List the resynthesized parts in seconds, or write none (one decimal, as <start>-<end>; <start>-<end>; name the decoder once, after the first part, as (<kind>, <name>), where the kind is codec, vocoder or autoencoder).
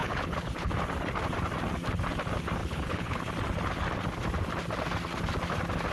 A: 0.0-0.7 (codec, HILCodec); 2.6-3.3